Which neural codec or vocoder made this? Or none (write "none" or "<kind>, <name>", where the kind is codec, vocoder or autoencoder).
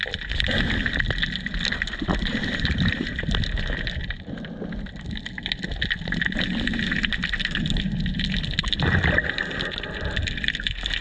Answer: none